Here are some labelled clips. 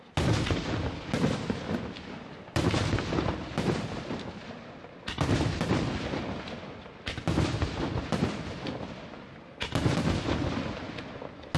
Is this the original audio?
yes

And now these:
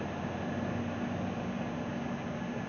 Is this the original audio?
yes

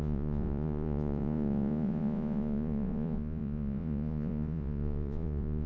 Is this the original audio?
no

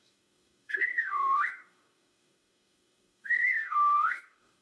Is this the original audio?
no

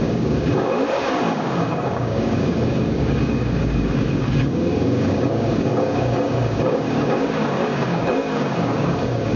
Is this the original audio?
no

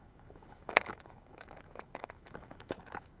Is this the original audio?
no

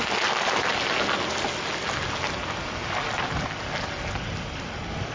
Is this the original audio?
yes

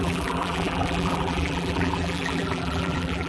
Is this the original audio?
no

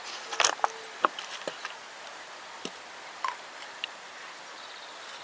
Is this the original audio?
no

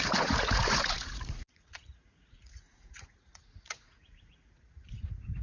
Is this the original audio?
no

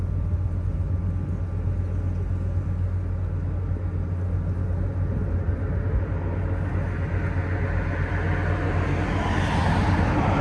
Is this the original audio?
yes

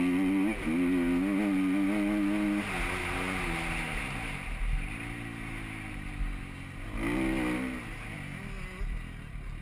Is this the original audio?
yes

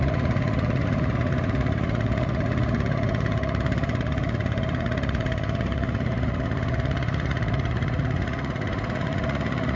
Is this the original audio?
no